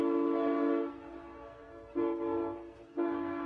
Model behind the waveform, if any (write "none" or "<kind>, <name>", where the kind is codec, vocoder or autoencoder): codec, SNAC